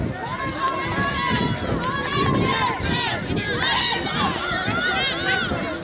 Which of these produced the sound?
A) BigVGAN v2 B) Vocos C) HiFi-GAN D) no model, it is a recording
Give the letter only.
D